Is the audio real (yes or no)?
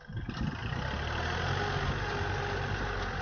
yes